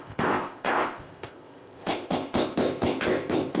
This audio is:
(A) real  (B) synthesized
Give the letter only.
B